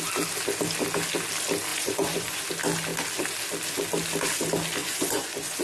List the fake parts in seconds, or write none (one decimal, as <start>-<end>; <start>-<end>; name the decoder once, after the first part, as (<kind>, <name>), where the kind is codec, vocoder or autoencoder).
1.7-2.4 (vocoder, Vocos); 4.8-5.6